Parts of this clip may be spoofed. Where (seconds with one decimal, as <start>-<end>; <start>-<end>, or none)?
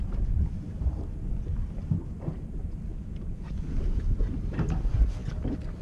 2.9-3.6